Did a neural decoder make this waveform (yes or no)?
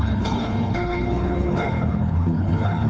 yes